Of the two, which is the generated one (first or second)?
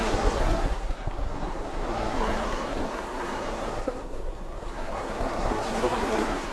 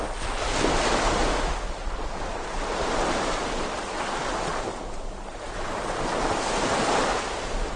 first